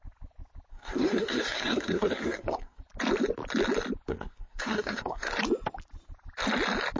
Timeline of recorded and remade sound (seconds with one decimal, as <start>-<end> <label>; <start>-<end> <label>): 0.0-0.7 recorded; 0.7-2.8 remade; 2.8-4.1 recorded; 4.1-5.3 remade; 5.3-7.0 recorded